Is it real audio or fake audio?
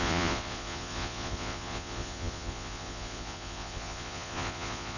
fake